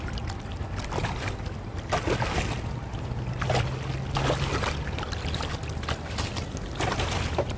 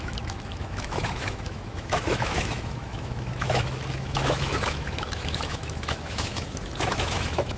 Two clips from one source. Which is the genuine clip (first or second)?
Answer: first